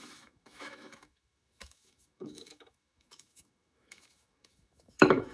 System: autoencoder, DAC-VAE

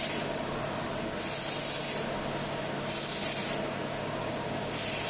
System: none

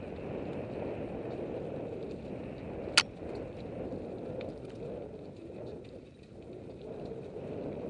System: none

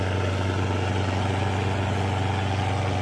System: none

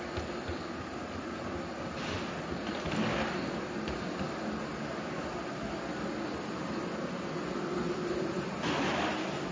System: none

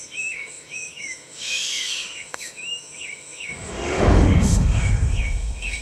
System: autoencoder, DAC-VAE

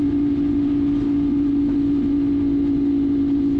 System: none